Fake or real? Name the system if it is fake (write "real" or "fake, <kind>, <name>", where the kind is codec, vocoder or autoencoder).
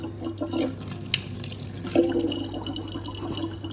real